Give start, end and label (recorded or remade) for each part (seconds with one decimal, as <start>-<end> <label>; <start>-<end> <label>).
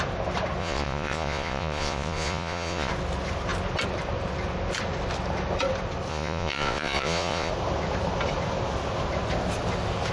0.0-0.6 recorded; 0.6-2.9 remade; 2.9-6.1 recorded; 6.1-7.5 remade; 7.5-10.1 recorded